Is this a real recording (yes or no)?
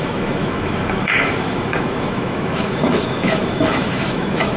no